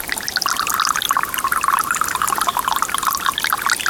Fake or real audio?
real